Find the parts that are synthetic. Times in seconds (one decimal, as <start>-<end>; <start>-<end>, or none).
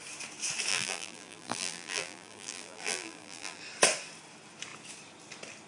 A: 0.7-3.6